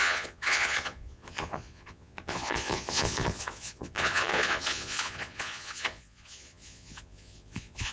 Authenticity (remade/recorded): remade